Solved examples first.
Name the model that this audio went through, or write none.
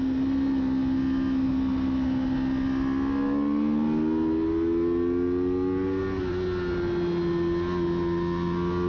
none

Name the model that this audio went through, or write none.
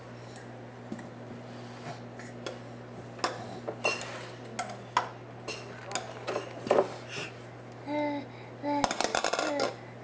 none